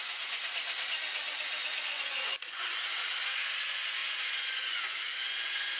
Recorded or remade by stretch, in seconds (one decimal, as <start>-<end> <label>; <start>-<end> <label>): 0.0-0.4 remade; 0.4-1.8 recorded; 1.8-3.0 remade; 3.0-3.6 recorded; 3.6-5.8 remade